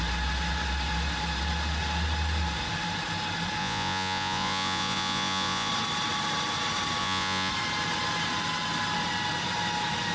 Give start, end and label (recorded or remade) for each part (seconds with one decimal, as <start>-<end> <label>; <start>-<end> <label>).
0.0-3.6 recorded; 3.6-5.7 remade; 5.7-7.0 recorded; 7.0-7.5 remade; 7.5-10.1 recorded